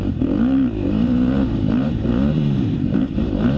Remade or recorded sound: remade